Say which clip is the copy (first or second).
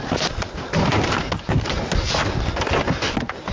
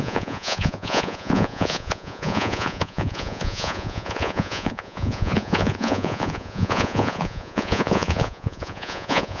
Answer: second